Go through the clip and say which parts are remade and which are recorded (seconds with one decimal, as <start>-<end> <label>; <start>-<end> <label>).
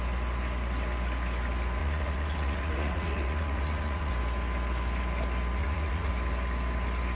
0.0-1.8 recorded; 1.8-4.1 remade; 4.1-5.6 recorded; 5.6-6.1 remade; 6.1-7.1 recorded